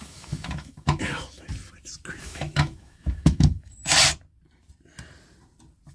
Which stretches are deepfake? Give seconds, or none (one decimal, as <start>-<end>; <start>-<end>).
0.0-1.5; 2.2-3.8